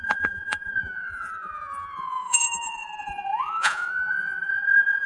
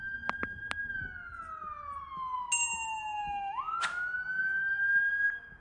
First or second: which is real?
second